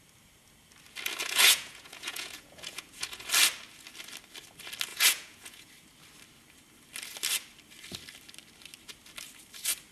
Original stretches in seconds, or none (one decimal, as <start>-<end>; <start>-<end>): 0.0-1.2; 3.3-4.9; 5.7-9.9